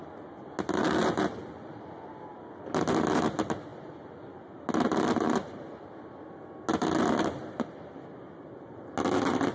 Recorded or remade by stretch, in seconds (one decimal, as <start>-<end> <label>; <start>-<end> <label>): 0.0-9.5 recorded